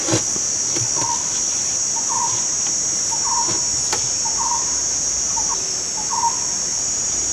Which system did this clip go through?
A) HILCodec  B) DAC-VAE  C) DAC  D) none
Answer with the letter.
D